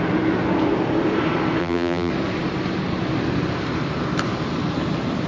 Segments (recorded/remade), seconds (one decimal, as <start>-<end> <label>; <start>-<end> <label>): 0.0-1.6 recorded; 1.6-2.1 remade; 2.1-5.3 recorded

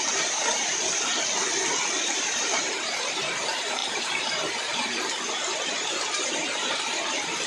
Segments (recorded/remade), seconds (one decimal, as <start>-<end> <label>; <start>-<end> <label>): 0.0-1.1 remade; 1.1-2.1 recorded; 2.1-7.5 remade

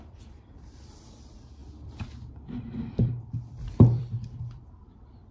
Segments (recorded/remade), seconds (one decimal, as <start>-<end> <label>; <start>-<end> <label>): 0.0-1.6 remade; 1.6-3.0 recorded; 3.0-5.3 remade